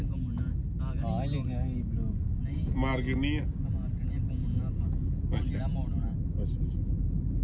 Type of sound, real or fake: real